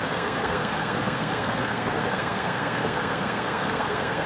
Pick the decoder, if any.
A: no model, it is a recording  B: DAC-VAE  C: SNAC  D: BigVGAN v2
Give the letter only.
C